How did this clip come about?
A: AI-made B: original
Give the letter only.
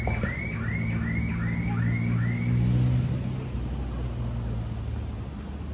B